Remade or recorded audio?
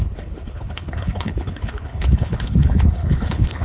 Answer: remade